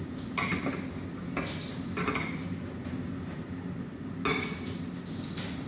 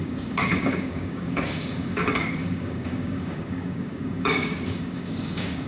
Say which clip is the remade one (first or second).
second